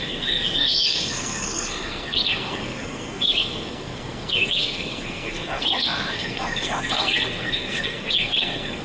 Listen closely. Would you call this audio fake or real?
fake